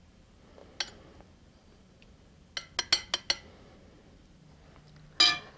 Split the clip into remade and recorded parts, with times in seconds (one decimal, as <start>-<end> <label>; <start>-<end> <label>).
0.0-5.6 recorded